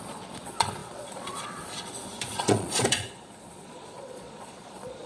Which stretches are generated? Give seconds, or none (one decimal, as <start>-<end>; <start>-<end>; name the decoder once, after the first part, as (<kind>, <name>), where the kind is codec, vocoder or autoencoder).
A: 0.0-5.1 (vocoder, Vocos)